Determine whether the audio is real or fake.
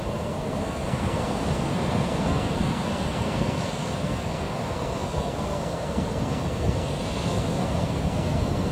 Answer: fake